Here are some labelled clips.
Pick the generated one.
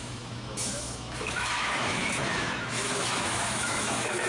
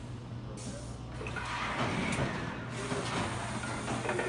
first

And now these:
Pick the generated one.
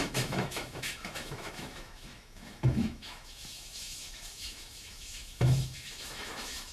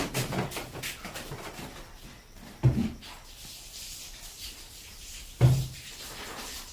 first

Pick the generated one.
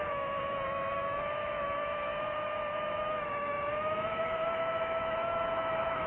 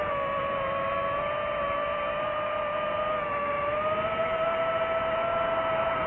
first